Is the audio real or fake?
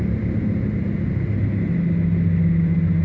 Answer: real